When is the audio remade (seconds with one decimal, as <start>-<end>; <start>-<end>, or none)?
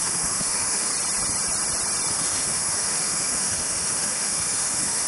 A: 0.0-0.9; 2.1-5.1